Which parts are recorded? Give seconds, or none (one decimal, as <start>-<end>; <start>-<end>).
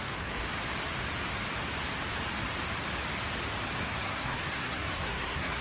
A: 0.4-3.8